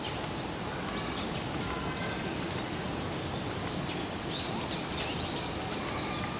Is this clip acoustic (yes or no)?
yes